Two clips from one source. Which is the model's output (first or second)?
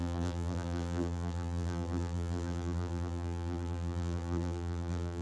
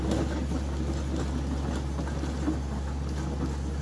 first